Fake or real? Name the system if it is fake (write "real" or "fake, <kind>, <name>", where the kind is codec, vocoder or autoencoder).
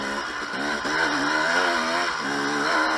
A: real